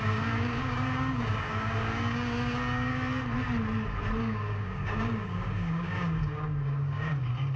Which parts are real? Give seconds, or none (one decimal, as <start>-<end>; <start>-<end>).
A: 2.9-4.2